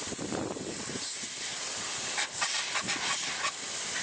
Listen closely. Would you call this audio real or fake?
fake